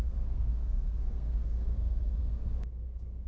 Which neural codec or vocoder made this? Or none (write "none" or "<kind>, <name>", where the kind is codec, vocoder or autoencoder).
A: codec, SNAC